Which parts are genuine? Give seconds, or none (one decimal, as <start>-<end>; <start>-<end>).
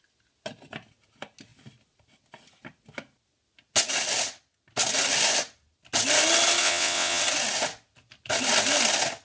0.0-6.6; 7.2-9.2